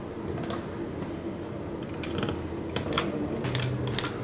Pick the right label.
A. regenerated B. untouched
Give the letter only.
B